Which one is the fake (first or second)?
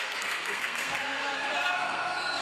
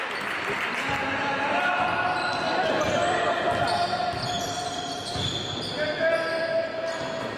first